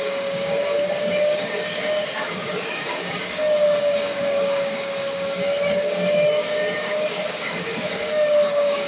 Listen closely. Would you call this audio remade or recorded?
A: remade